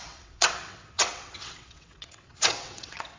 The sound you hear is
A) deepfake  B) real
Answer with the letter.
A